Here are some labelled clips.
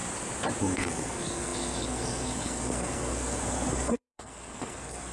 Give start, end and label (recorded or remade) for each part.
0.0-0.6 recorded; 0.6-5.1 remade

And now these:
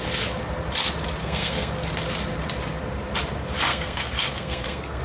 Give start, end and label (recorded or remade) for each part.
0.0-1.2 recorded; 1.2-1.7 remade; 1.7-3.7 recorded; 3.7-5.0 remade

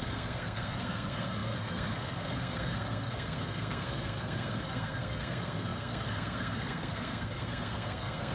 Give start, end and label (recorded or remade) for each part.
0.0-8.3 remade

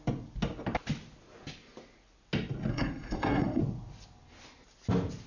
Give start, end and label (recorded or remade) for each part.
0.0-2.7 recorded; 2.7-3.6 remade; 3.6-5.3 recorded

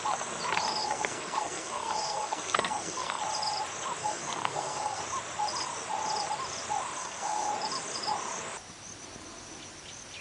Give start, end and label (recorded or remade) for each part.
0.0-0.8 recorded; 0.8-3.2 remade; 3.2-4.0 recorded; 4.0-5.0 remade; 5.0-7.0 recorded; 7.0-7.5 remade; 7.5-10.2 recorded